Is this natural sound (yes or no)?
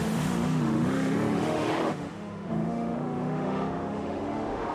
no